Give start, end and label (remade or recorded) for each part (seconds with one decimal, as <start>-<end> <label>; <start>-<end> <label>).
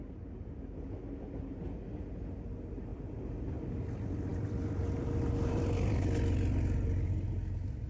0.0-4.3 recorded; 4.3-6.0 remade; 6.0-7.9 recorded